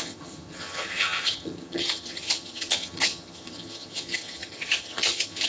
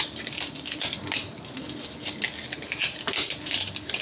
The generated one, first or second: first